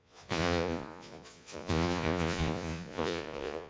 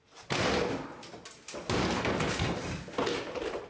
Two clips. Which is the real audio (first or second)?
second